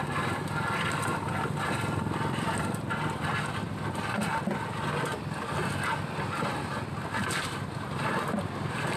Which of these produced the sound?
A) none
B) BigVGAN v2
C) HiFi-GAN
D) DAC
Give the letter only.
A